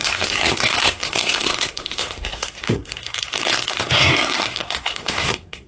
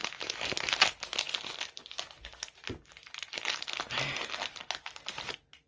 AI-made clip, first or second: first